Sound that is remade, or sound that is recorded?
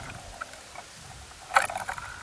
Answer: recorded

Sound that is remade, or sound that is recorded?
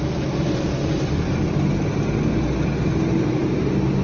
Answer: recorded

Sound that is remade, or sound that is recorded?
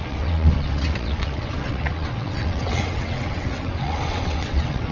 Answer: remade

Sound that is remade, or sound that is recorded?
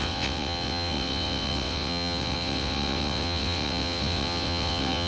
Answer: remade